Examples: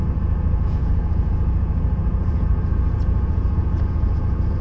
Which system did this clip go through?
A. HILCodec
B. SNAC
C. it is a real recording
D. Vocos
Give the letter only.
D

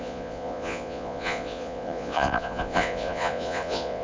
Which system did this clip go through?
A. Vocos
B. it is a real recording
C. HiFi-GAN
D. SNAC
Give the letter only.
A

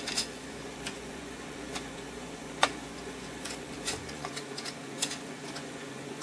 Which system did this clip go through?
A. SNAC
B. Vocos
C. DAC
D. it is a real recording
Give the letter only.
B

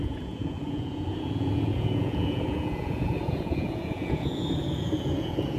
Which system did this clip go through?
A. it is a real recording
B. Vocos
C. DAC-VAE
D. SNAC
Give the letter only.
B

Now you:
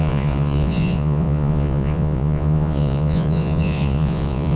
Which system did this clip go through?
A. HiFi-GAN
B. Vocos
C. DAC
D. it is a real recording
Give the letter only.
B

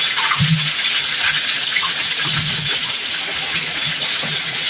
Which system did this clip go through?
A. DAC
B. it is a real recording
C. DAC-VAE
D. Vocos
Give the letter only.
D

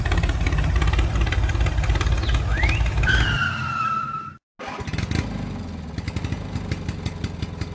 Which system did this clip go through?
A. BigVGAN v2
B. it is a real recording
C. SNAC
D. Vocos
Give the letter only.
B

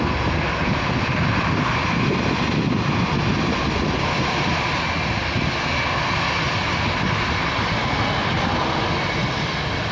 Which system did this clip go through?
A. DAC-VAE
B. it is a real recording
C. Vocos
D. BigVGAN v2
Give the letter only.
B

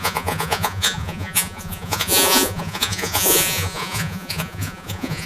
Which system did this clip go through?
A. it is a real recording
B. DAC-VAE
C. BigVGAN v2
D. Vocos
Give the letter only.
D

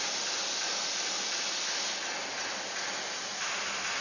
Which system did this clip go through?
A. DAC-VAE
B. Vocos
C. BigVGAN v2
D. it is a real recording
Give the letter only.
D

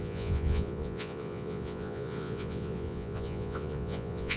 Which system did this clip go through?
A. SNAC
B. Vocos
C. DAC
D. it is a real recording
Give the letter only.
B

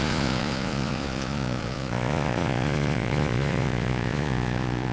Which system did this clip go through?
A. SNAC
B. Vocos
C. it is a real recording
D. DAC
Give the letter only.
B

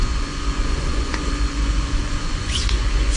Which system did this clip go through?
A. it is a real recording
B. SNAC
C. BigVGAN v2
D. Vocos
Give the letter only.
D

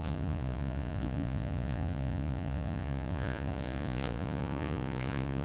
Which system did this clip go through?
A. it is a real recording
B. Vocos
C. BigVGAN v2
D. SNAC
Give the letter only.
B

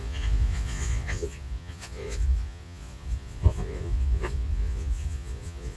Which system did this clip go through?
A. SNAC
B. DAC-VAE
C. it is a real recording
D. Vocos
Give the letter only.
D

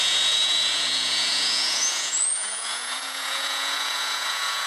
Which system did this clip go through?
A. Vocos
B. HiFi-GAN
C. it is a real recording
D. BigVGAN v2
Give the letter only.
A